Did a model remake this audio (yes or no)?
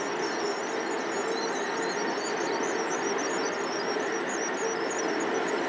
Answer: no